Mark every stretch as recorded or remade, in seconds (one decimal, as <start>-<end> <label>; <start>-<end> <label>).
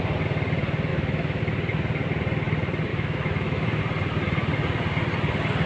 0.0-0.9 recorded; 0.9-1.4 remade; 1.4-2.9 recorded; 2.9-3.8 remade; 3.8-5.7 recorded